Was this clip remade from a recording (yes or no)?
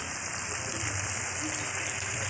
no